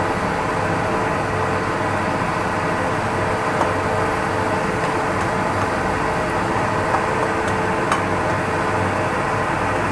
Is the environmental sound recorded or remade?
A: recorded